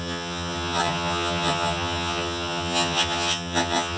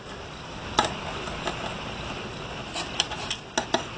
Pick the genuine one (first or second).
second